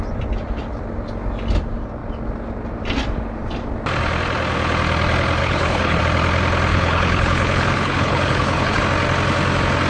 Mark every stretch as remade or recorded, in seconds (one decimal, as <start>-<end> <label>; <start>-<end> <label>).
0.0-5.4 recorded; 5.4-6.0 remade; 6.0-6.7 recorded; 6.7-8.8 remade; 8.8-9.9 recorded